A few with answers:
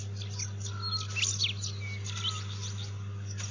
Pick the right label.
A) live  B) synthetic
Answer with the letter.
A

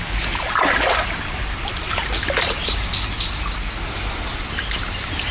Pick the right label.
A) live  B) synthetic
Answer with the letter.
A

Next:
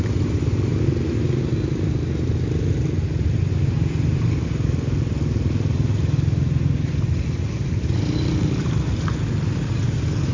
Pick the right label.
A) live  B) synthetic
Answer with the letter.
A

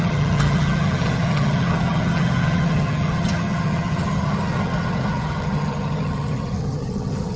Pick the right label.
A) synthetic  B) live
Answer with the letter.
A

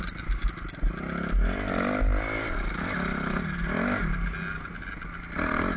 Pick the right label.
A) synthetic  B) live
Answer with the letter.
B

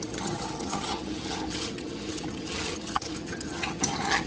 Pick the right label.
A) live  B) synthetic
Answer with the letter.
B